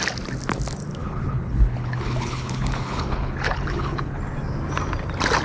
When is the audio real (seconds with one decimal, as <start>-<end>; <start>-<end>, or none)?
0.0-1.0; 4.2-5.4